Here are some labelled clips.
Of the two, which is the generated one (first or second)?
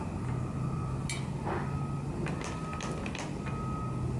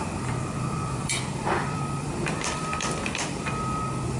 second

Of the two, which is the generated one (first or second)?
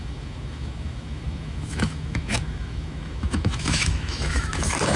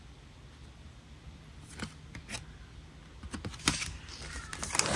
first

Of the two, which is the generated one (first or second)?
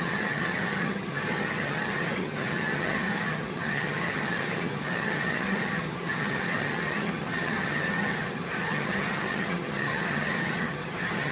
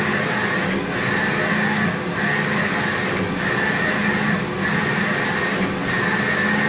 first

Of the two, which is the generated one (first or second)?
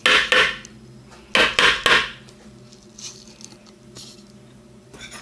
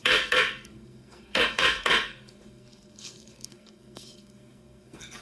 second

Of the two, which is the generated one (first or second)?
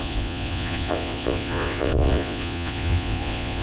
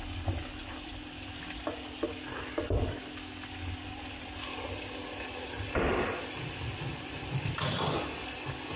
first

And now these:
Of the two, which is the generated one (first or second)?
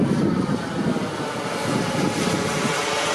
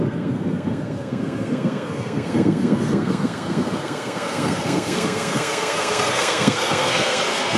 second